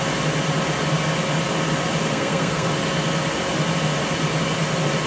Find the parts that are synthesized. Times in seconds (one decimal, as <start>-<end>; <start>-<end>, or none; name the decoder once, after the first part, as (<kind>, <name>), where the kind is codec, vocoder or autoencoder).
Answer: 2.1-2.7 (codec, SNAC)